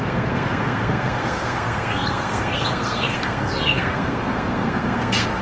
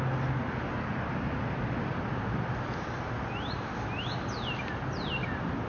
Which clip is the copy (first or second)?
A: first